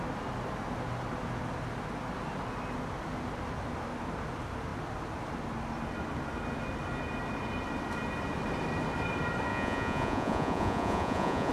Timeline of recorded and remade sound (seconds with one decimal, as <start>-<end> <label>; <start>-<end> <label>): 0.0-9.5 recorded; 9.5-11.5 remade